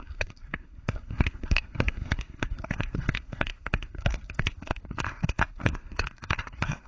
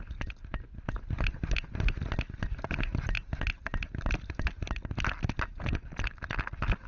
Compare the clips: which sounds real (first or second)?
second